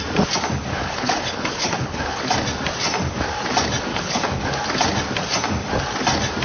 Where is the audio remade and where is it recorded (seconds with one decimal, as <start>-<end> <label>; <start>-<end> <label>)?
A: 0.0-0.7 recorded; 0.7-2.2 remade; 2.2-3.9 recorded; 3.9-4.4 remade; 4.4-6.4 recorded